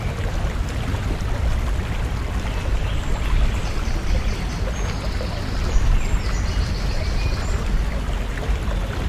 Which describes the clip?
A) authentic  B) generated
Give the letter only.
A